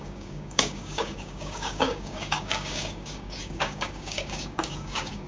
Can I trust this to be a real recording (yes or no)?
no